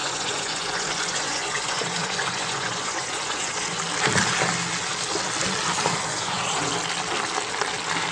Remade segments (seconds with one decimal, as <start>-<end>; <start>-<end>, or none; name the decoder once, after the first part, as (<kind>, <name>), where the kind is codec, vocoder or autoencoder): 0.0-3.8 (vocoder, Vocos); 6.1-6.7